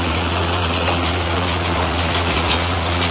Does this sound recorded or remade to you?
remade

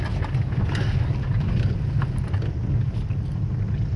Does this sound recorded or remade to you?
recorded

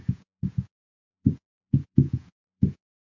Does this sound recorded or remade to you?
remade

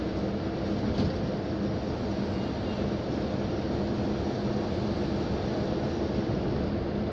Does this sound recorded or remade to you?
recorded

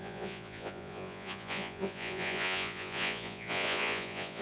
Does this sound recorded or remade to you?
remade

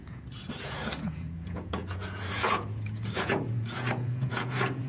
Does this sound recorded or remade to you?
remade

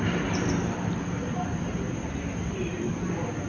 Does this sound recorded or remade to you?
recorded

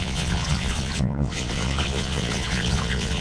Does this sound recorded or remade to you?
remade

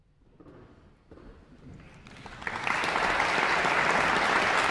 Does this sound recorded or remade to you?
recorded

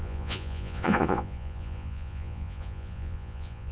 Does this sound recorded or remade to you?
remade